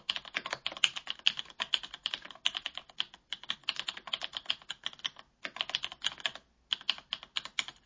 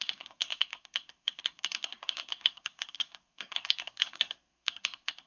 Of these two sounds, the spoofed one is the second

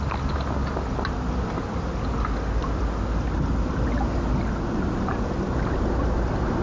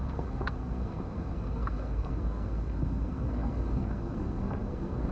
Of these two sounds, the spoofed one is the second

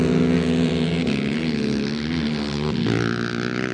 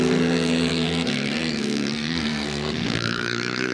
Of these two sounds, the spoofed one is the second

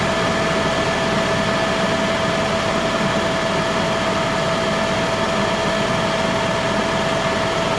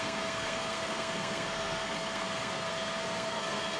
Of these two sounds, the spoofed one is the second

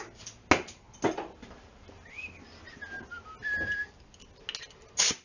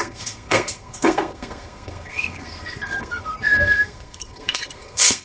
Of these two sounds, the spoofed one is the second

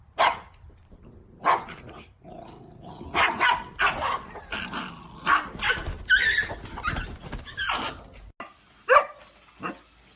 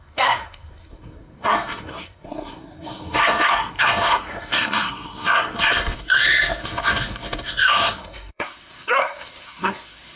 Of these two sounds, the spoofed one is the second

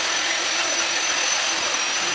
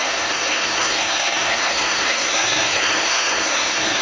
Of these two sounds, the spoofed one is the second